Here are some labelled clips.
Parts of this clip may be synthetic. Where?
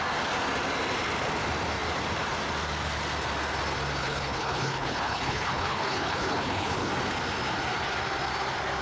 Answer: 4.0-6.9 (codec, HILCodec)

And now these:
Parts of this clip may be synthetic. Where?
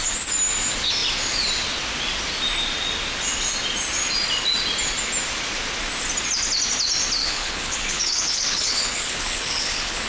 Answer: 7.2-10.1 (codec, HILCodec)